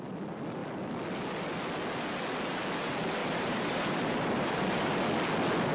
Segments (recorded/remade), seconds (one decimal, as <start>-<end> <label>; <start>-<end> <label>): 0.0-3.2 recorded; 3.2-5.0 remade; 5.0-5.7 recorded